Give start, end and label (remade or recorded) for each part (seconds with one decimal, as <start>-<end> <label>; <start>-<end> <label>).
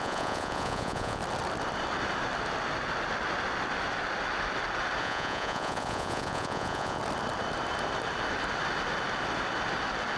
0.0-1.2 remade; 1.2-5.0 recorded; 5.0-7.0 remade; 7.0-10.2 recorded